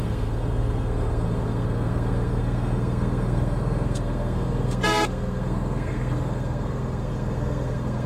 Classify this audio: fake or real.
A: fake